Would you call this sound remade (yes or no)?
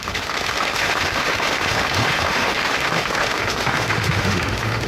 yes